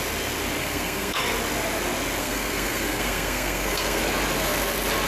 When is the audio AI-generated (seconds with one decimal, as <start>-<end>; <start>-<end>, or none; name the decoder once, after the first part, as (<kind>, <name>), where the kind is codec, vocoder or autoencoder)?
0.6-1.2 (codec, SNAC); 2.2-4.0